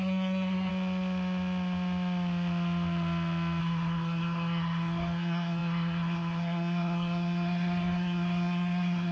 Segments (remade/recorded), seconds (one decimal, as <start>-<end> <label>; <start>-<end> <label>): 0.0-0.7 remade; 0.7-3.6 recorded; 3.6-9.1 remade